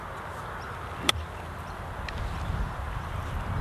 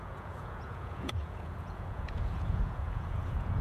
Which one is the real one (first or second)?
first